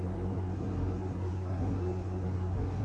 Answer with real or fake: fake